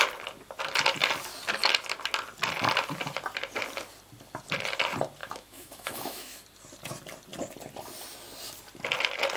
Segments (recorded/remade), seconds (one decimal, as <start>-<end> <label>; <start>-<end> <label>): 0.0-5.2 recorded; 5.2-6.4 remade; 6.4-9.4 recorded